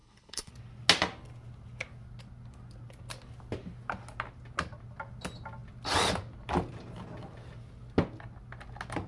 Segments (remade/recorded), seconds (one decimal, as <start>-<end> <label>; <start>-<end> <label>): 0.0-0.5 remade; 0.5-9.1 recorded